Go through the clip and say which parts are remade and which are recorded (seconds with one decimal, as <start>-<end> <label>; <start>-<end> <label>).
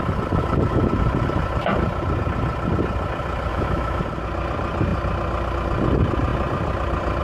0.0-3.5 recorded; 3.5-4.0 remade; 4.0-7.2 recorded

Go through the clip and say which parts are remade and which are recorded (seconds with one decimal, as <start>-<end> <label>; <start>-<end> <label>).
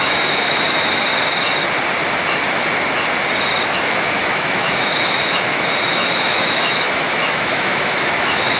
0.0-1.1 remade; 1.1-4.2 recorded; 4.2-8.6 remade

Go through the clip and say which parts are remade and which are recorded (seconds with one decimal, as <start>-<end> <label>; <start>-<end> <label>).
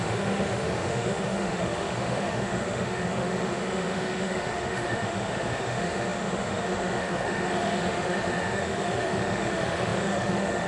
0.0-10.7 remade